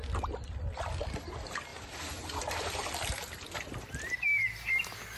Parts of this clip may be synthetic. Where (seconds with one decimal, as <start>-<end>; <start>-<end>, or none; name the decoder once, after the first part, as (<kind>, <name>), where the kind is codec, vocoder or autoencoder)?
none